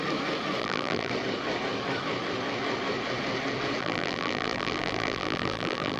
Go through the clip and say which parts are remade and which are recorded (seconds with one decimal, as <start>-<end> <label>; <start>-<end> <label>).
0.0-0.6 recorded; 0.6-1.1 remade; 1.1-3.8 recorded; 3.8-6.0 remade